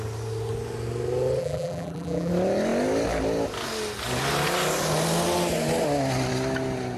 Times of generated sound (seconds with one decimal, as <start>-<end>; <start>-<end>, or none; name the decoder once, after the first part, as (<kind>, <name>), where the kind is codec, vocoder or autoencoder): 1.4-2.3 (vocoder, BigVGAN v2)